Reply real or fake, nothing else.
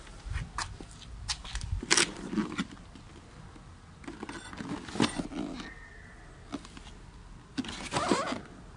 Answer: real